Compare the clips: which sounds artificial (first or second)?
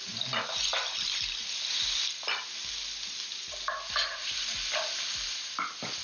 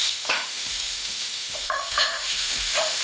second